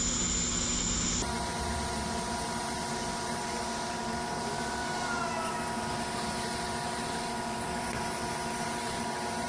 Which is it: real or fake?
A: real